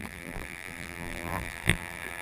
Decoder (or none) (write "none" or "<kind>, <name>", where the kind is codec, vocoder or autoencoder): vocoder, BigVGAN v2